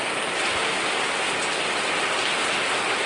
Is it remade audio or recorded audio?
recorded